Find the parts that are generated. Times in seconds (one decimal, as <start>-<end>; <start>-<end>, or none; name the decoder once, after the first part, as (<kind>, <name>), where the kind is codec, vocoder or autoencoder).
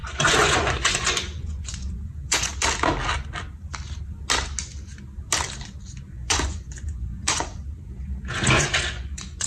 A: 0.0-2.5 (vocoder, Vocos); 6.1-7.5; 8.3-9.5